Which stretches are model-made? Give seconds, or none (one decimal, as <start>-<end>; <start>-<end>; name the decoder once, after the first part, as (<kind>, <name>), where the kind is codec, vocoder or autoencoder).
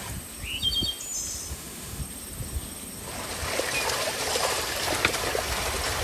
1.5-2.0 (autoencoder, DAC-VAE)